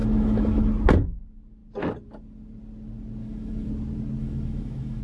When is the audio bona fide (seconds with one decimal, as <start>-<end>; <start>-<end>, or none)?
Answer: 0.6-3.2; 3.7-4.2